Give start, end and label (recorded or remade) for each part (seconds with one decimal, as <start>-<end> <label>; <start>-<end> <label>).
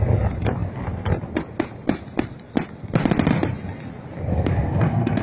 0.0-4.3 recorded; 4.3-5.2 remade